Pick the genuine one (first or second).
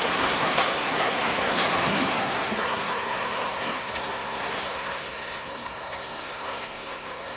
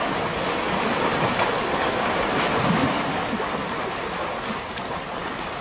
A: second